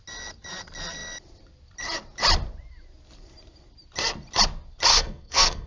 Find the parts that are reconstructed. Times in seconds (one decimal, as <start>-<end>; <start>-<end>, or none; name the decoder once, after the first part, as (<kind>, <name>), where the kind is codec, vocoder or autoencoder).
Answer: 4.9-5.7 (codec, SNAC)